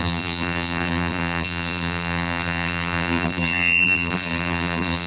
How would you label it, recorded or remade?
remade